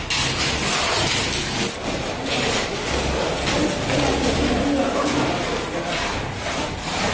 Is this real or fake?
real